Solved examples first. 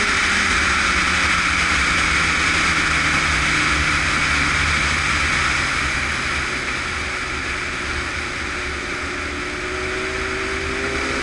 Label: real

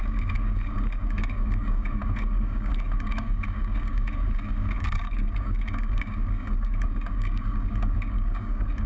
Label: fake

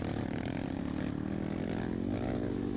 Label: real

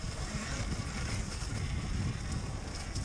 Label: real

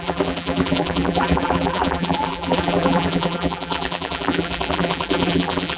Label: fake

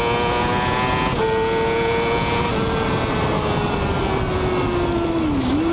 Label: real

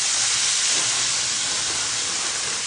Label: real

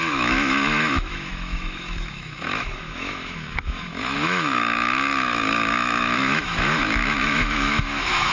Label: fake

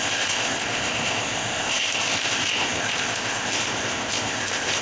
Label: fake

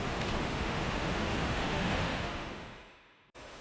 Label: fake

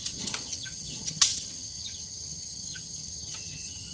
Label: fake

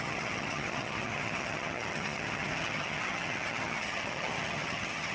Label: fake